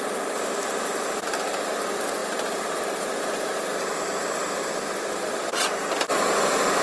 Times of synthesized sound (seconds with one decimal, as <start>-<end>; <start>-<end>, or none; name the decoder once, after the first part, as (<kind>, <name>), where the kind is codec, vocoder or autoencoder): none

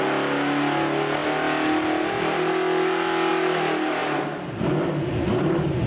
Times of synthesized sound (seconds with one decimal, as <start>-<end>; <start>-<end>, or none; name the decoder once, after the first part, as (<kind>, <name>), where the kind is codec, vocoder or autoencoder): none

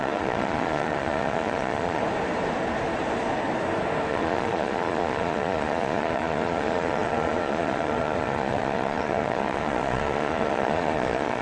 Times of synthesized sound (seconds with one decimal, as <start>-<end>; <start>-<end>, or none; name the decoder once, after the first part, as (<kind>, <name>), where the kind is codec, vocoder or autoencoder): 0.0-2.0 (vocoder, Vocos); 4.1-11.4

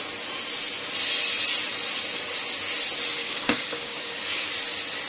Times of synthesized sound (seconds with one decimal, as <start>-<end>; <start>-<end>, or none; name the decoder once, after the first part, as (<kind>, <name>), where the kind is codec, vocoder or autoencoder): 3.2-4.5 (codec, DAC)